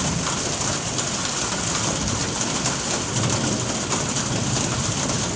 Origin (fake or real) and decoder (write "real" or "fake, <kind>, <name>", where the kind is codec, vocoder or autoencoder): real